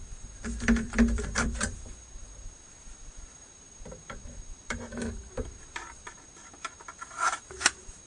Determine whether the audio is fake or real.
fake